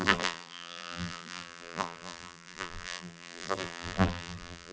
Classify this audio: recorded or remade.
remade